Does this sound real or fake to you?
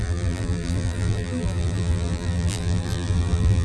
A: fake